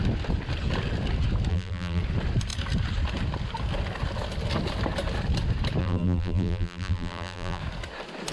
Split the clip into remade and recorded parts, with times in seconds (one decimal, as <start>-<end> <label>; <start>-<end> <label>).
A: 0.0-1.5 recorded; 1.5-2.0 remade; 2.0-5.8 recorded; 5.8-7.6 remade; 7.6-8.3 recorded